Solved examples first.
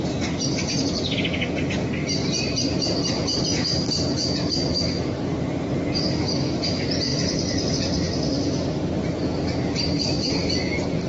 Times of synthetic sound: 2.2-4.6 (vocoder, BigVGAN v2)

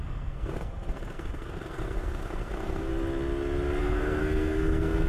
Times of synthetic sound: 0.0-2.9 (codec, SNAC); 3.8-5.1

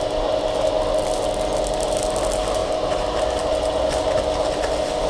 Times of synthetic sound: 2.6-3.3 (vocoder, BigVGAN v2)

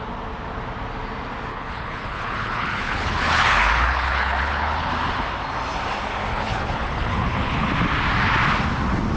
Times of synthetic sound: 1.5-4.9 (codec, HILCodec); 6.3-7.7